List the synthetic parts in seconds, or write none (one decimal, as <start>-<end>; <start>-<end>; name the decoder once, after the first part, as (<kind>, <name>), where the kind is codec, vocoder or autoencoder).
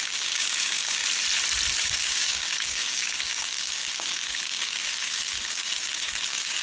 0.0-1.0 (codec, DAC); 1.8-6.6